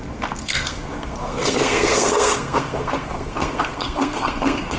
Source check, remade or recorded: remade